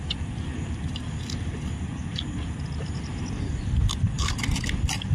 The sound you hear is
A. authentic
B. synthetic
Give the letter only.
A